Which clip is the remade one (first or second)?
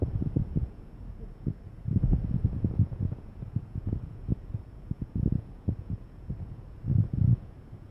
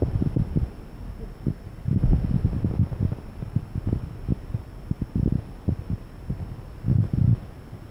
first